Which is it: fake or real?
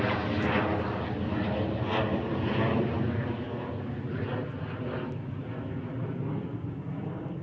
real